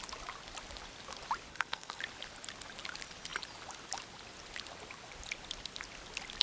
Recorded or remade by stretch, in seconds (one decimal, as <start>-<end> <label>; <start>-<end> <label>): 0.0-1.5 recorded; 1.5-2.0 remade; 2.0-6.4 recorded

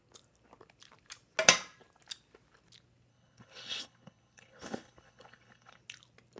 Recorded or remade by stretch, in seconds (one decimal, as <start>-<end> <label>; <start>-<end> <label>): 0.0-3.1 recorded; 3.1-5.8 remade; 5.8-6.4 recorded

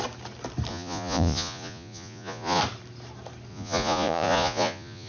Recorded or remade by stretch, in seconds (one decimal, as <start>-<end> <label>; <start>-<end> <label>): 0.0-0.7 recorded; 0.7-2.6 remade; 2.6-3.5 recorded; 3.5-5.1 remade

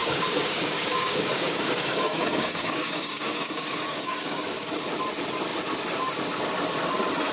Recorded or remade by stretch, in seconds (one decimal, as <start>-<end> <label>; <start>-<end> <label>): 0.0-4.4 remade; 4.4-7.3 recorded

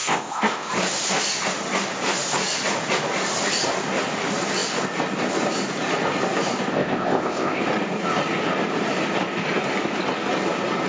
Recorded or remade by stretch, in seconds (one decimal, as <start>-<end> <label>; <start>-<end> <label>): 0.0-0.7 remade; 0.7-6.7 recorded; 6.7-7.6 remade; 7.6-10.9 recorded

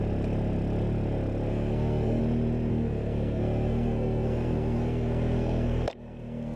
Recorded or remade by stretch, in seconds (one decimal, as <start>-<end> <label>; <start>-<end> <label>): 0.0-1.5 recorded; 1.5-2.2 remade; 2.2-2.7 recorded; 2.7-6.6 remade

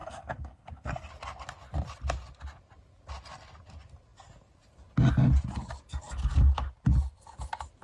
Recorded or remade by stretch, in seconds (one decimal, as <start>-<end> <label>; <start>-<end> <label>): 0.0-1.1 remade; 1.1-7.8 recorded